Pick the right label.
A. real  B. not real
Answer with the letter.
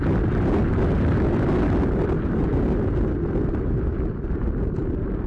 A